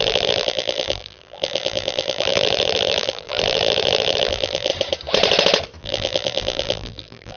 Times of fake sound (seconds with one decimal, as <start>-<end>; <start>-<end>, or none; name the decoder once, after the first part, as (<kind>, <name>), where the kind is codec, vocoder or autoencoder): 0.0-4.7 (vocoder, BigVGAN v2); 5.8-7.4